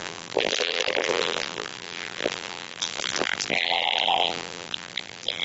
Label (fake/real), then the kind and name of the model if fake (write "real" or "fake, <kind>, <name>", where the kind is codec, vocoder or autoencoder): fake, vocoder, BigVGAN v2